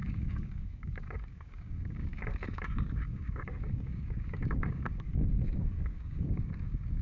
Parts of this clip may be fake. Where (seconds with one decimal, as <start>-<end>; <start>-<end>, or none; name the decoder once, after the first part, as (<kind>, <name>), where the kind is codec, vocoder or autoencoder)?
0.0-7.0 (codec, DAC)